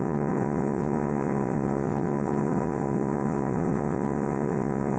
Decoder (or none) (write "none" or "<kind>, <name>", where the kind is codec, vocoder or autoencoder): vocoder, WaveNeXt